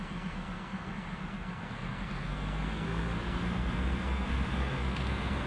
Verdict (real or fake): fake